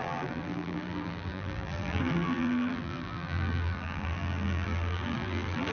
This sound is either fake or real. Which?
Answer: fake